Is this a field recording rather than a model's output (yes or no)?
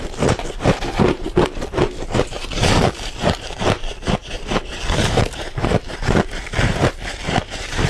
no